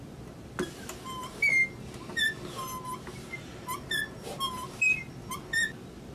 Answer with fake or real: real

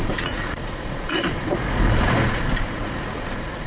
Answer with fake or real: fake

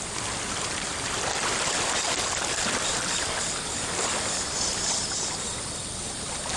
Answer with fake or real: real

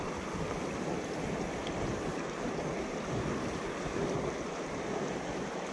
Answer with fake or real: real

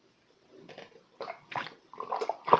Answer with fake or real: real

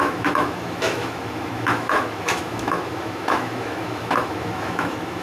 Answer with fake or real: fake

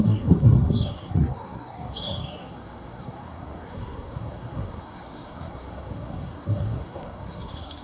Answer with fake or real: fake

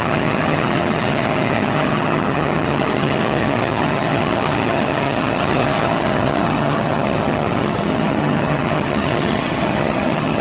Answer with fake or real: fake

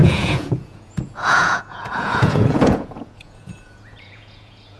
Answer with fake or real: fake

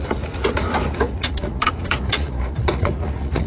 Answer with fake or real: fake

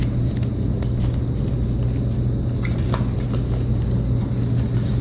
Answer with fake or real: fake